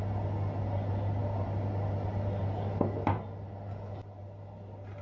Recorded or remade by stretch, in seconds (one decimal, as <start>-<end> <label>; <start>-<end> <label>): 0.0-5.0 recorded